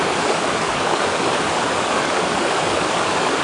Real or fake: fake